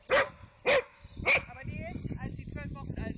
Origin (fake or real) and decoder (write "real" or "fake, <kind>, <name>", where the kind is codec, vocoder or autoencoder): real